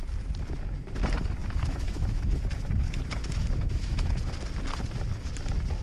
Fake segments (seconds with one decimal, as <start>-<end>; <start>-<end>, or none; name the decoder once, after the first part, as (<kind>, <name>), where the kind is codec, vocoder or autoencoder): 1.4-2.4 (autoencoder, DAC-VAE); 3.2-4.1